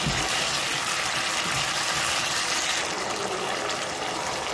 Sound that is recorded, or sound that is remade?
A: recorded